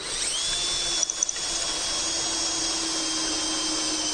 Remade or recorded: recorded